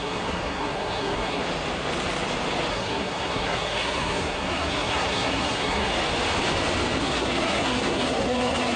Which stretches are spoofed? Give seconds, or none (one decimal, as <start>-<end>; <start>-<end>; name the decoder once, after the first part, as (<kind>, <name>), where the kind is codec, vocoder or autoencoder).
0.0-1.4 (codec, SNAC); 2.7-5.9; 7.0-8.8